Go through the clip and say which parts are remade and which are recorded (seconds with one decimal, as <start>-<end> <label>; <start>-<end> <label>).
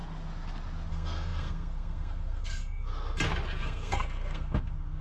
0.0-0.9 recorded; 0.9-2.9 remade; 2.9-3.6 recorded; 3.6-5.0 remade